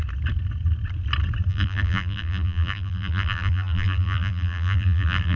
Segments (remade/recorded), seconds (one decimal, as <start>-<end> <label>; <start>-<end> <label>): 0.0-1.5 recorded; 1.5-5.4 remade